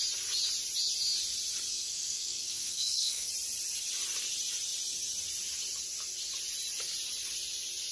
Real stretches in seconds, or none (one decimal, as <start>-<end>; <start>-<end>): 0.0-1.7; 3.3-7.9